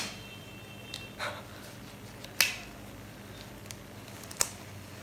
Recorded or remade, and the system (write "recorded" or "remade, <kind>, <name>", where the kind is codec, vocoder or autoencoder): recorded